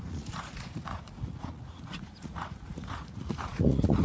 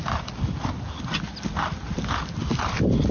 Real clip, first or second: second